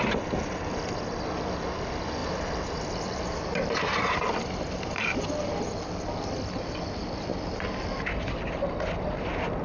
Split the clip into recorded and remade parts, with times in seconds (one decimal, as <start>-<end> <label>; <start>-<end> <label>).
0.0-9.6 recorded